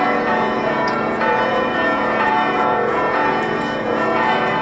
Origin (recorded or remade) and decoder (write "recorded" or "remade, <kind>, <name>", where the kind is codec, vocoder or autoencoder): remade, vocoder, Vocos